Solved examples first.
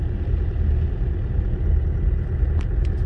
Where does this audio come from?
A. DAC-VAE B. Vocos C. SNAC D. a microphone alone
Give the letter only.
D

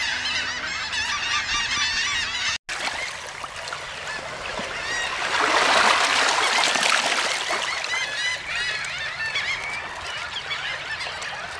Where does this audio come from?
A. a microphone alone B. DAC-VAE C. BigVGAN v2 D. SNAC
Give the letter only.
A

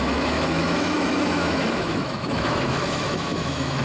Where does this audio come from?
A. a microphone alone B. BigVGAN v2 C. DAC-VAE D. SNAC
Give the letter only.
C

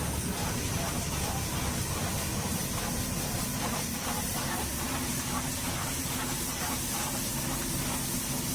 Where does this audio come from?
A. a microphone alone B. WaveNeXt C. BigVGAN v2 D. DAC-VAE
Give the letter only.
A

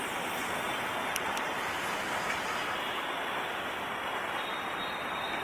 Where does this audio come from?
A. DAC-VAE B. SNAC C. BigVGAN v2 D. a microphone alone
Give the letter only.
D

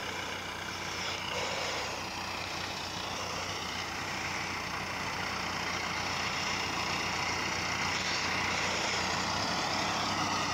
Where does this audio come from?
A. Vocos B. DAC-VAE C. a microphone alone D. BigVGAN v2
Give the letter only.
C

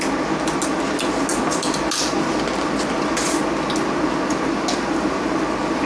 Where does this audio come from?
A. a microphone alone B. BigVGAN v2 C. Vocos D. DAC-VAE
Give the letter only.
A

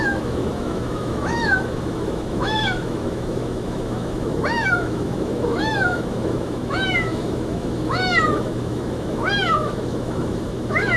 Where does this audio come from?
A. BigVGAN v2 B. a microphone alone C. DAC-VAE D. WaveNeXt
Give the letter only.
C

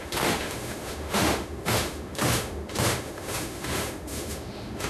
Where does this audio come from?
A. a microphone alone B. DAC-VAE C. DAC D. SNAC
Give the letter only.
B